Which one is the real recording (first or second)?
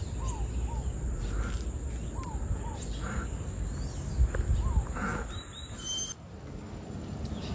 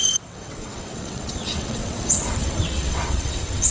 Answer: first